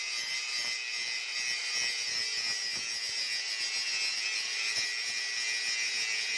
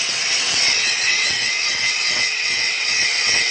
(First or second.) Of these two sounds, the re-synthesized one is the second